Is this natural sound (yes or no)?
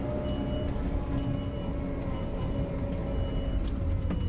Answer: yes